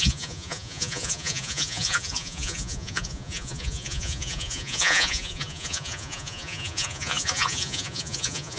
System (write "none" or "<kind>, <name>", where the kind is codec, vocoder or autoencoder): vocoder, Vocos